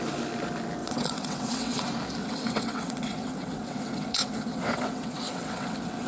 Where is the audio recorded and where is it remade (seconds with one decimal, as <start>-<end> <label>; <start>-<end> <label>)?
0.0-0.8 recorded; 0.8-1.8 remade; 1.8-2.2 recorded; 2.2-6.1 remade